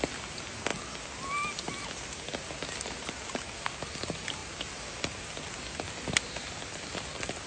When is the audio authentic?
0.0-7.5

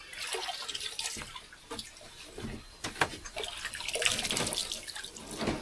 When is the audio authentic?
0.0-5.6

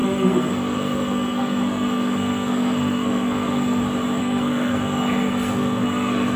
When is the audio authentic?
3.8-4.2

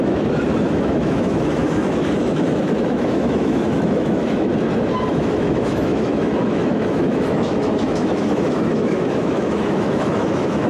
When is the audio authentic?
4.5-5.1

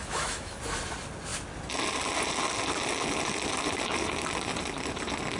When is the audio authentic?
0.6-5.4

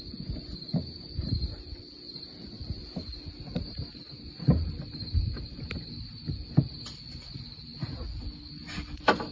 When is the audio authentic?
0.0-9.3

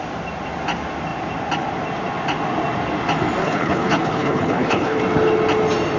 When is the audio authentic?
0.0-3.4; 5.0-6.0

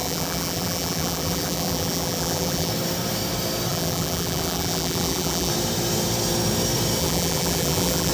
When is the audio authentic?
2.7-3.7; 5.5-7.0